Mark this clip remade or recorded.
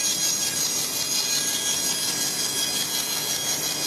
recorded